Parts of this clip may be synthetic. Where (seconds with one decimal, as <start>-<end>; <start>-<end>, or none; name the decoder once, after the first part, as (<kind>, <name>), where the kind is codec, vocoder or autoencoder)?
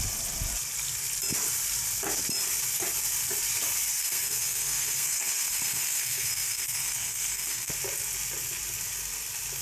4.0-7.7 (codec, SNAC)